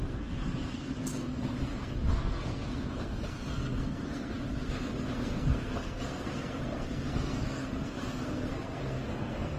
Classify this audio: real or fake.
fake